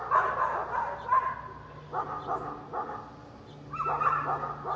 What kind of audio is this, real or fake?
real